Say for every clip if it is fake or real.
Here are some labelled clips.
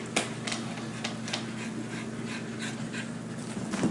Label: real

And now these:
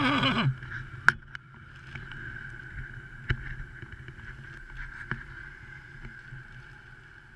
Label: real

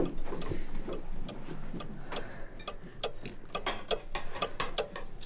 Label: real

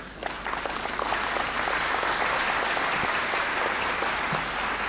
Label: real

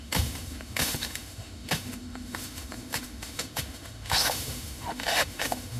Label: fake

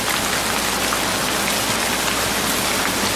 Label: real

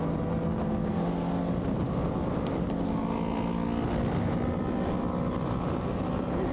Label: real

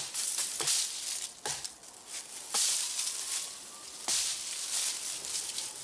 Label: real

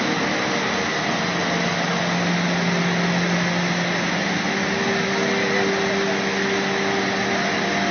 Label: real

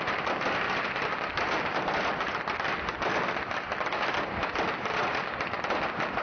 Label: real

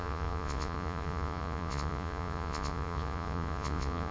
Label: fake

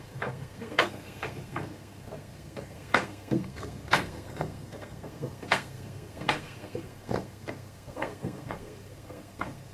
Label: fake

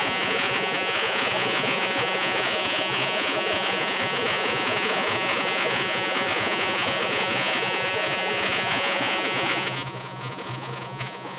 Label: fake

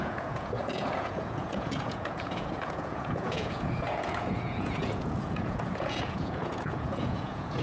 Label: fake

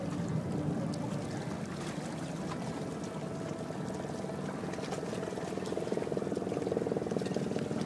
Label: real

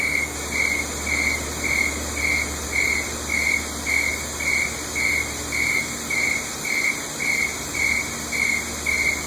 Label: real